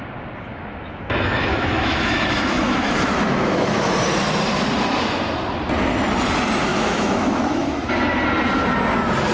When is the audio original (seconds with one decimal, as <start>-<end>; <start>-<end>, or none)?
0.0-0.5; 3.9-6.7; 7.9-9.3